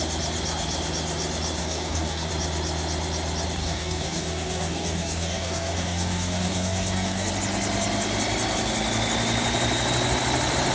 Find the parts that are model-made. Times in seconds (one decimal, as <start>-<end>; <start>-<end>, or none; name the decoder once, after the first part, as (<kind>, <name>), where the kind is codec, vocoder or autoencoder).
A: 1.6-2.3 (codec, DAC); 3.6-7.3